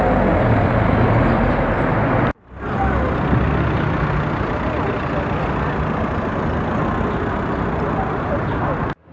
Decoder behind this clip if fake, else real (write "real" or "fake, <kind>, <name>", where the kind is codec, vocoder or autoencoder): real